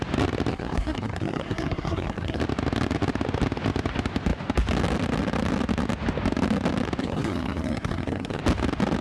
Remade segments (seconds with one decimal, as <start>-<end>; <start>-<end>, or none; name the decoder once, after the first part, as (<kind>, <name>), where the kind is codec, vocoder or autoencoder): 0.5-2.4 (codec, SNAC); 7.0-8.4